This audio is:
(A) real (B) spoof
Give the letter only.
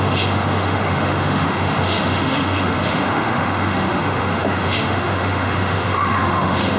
B